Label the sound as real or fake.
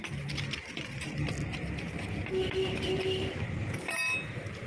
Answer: real